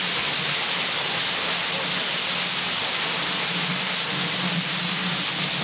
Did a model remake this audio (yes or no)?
no